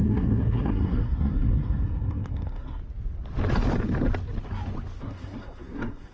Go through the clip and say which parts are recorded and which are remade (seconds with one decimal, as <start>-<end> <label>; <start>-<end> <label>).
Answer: 0.0-2.8 remade; 2.8-5.0 recorded; 5.0-6.1 remade